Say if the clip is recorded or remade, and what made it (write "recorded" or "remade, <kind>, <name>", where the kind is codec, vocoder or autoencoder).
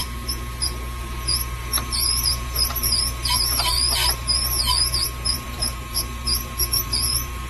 remade, vocoder, BigVGAN v2